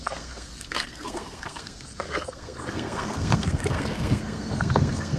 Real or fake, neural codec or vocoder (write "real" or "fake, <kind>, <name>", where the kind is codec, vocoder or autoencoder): fake, codec, SNAC